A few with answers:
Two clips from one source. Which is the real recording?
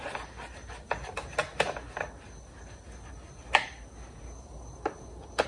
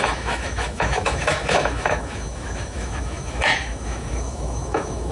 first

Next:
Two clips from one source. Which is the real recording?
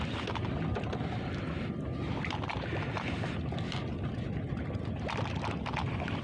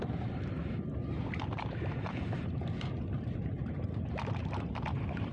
first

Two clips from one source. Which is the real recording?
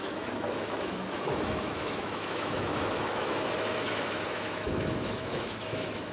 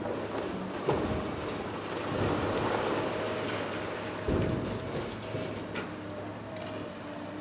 second